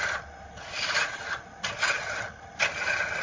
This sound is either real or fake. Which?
real